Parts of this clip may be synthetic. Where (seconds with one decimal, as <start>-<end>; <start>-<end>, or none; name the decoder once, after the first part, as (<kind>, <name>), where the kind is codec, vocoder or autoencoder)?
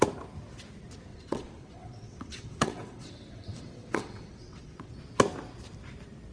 1.1-4.9 (vocoder, WaveNeXt)